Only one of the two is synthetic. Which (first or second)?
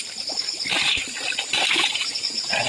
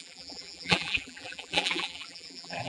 second